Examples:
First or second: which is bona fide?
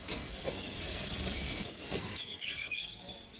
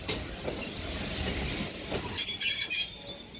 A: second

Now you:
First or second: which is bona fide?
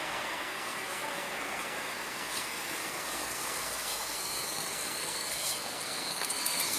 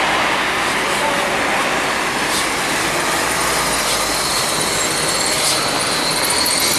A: second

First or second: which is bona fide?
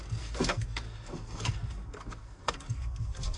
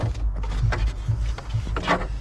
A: second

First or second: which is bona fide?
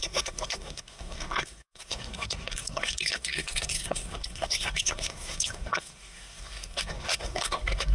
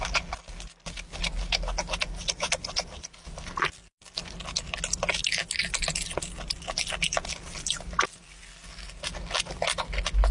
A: second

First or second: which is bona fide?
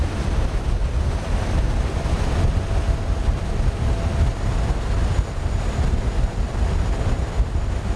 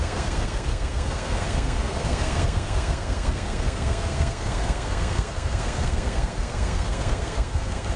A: first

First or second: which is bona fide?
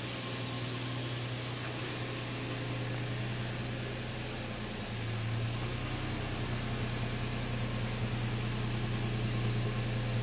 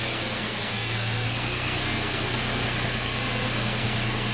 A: first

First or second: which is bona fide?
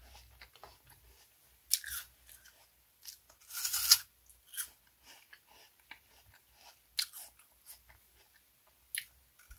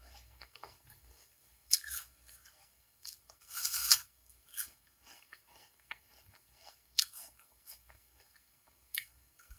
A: first